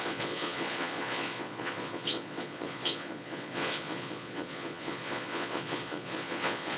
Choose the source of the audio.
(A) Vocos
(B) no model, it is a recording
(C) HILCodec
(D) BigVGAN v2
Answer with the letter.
A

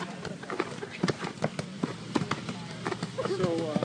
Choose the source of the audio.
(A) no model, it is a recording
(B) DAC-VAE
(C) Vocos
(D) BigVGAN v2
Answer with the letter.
A